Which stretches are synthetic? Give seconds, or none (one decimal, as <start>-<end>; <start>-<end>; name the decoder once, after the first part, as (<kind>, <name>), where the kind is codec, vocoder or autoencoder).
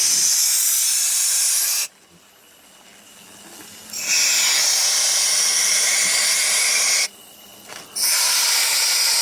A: none